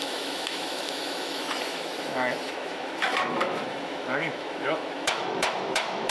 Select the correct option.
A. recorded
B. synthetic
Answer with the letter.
B